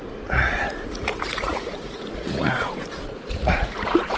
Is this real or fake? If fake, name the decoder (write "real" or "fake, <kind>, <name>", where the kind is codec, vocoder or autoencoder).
fake, vocoder, Vocos